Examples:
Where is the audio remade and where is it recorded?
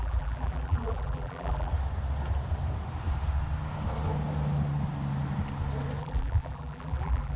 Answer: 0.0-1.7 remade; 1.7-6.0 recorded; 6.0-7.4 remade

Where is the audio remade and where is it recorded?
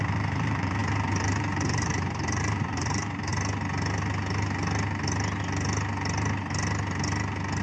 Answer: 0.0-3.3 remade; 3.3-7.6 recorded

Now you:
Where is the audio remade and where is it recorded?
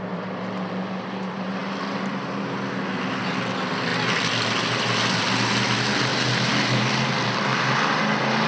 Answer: 0.0-8.5 recorded